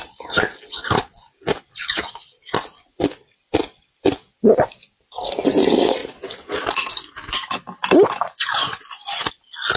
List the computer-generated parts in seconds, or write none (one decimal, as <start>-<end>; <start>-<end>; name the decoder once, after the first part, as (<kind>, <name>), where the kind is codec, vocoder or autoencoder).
none